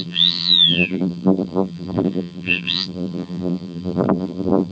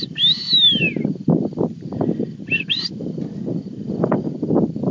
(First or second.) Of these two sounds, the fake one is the first